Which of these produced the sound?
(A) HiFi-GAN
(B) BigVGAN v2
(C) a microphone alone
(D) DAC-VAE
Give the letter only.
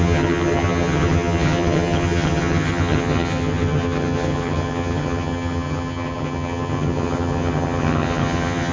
A